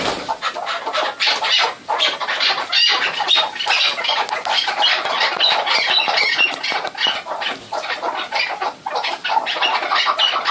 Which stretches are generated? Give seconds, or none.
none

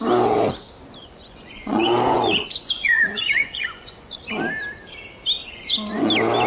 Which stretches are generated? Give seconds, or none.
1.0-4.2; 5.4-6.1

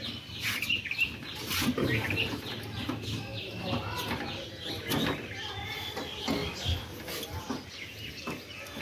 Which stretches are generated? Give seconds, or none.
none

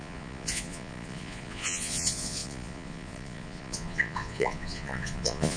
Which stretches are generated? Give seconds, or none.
0.0-5.6

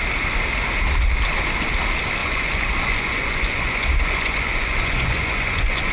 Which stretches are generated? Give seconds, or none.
2.2-5.9